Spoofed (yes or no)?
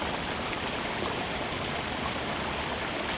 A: no